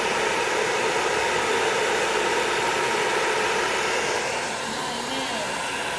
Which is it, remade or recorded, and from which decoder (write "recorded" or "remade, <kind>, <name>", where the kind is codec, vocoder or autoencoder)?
recorded